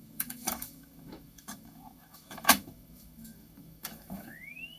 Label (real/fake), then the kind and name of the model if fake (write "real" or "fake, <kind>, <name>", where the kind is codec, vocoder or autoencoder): fake, autoencoder, DAC-VAE